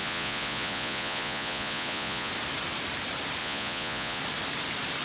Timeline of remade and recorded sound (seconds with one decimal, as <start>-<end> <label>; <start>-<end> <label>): 0.0-2.3 remade; 2.3-3.4 recorded; 3.4-4.2 remade; 4.2-5.0 recorded